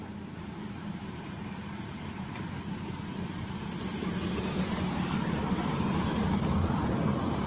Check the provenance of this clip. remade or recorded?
remade